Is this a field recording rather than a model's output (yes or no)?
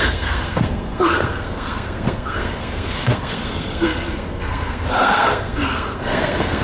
no